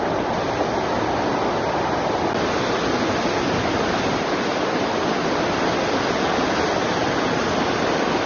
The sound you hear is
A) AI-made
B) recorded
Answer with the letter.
B